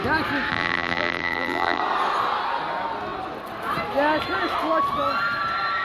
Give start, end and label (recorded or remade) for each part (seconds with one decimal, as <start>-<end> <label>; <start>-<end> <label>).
0.0-0.5 recorded; 0.5-1.8 remade; 1.8-5.8 recorded